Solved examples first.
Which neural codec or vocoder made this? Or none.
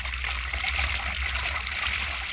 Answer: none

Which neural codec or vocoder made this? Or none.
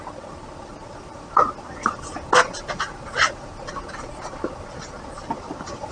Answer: none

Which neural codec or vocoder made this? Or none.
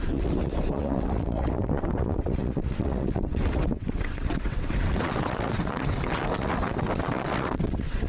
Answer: vocoder, WaveNeXt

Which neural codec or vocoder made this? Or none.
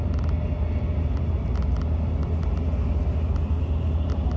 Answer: none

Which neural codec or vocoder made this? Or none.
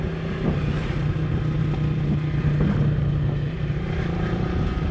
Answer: none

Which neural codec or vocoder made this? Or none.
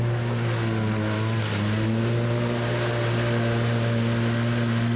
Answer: none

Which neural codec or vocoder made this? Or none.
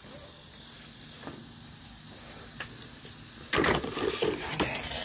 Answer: none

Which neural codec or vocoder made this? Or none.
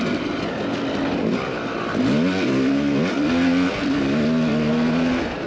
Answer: none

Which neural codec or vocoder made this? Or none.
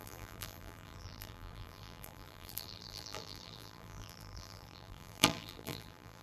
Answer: vocoder, BigVGAN v2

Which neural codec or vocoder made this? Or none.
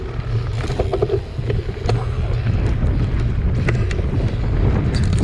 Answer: none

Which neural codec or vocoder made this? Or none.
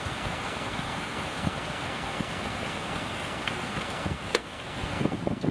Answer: codec, SNAC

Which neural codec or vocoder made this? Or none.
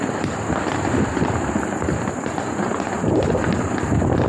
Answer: none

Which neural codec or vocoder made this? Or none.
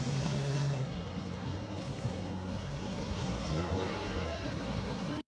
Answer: codec, SNAC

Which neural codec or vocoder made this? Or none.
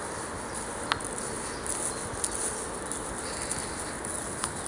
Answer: none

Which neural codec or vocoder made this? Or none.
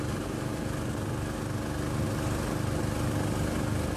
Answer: none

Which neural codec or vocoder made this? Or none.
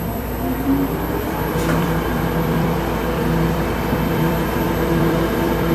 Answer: vocoder, BigVGAN v2